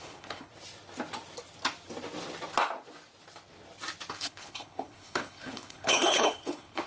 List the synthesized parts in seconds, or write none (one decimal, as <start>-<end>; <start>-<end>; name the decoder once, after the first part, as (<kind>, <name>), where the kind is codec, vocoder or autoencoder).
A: 0.0-0.5 (codec, HILCodec); 4.1-6.9